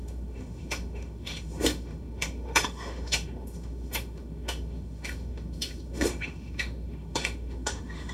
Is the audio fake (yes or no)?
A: yes